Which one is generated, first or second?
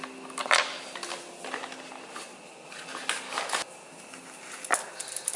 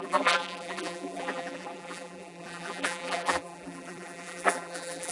second